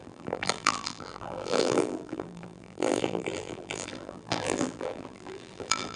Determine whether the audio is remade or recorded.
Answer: remade